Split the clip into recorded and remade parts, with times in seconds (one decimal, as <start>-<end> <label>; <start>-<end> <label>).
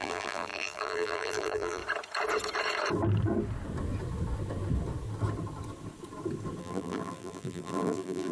0.0-1.8 remade; 1.8-6.6 recorded; 6.6-8.3 remade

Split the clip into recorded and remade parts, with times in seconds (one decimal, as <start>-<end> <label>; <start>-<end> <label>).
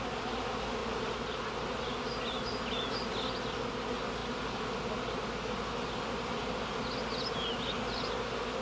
0.0-0.8 recorded; 0.8-2.2 remade; 2.2-8.6 recorded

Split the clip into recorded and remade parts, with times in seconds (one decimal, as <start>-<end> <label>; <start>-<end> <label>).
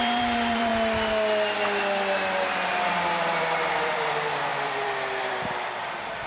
0.0-0.7 remade; 0.7-3.1 recorded; 3.1-6.3 remade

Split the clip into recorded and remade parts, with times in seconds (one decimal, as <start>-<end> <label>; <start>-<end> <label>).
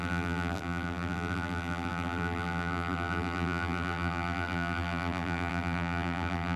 0.0-6.6 remade